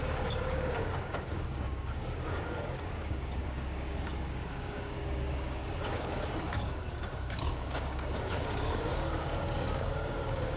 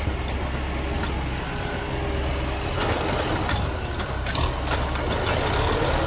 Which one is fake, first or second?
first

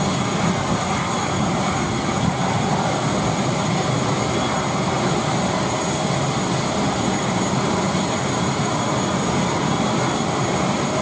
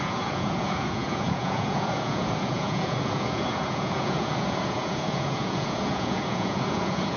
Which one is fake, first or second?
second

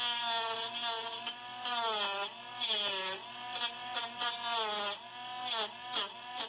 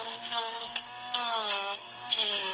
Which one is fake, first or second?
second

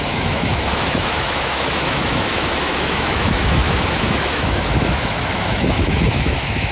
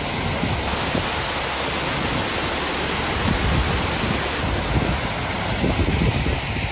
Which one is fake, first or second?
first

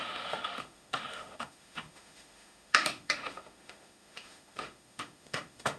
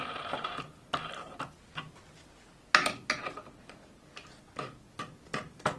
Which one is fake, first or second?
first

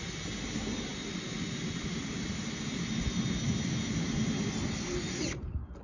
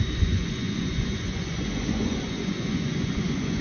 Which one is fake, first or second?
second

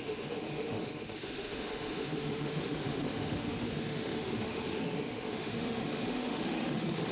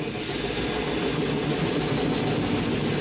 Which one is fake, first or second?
first